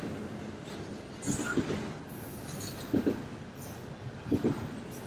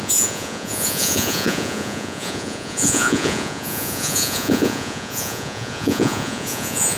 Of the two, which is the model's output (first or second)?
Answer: second